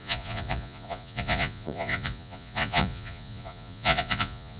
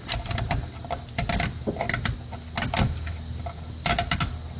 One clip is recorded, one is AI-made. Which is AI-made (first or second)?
first